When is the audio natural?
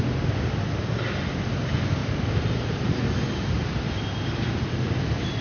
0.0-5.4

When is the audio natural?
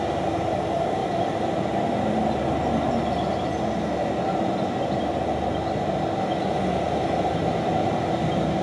0.0-8.6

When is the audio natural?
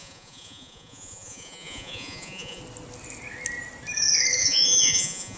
2.6-4.4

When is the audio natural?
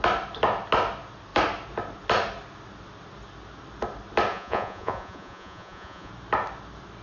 0.0-4.3; 6.1-7.0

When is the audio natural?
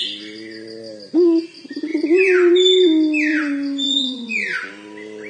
0.0-1.9; 2.5-3.3; 4.7-5.3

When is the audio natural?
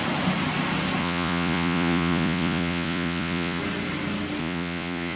0.0-1.0; 3.6-4.4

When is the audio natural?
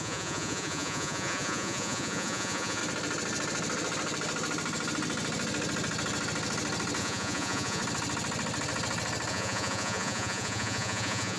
2.8-7.0; 7.8-9.3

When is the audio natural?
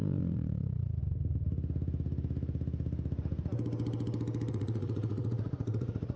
1.0-4.5